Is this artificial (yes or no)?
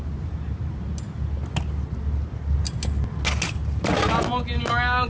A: no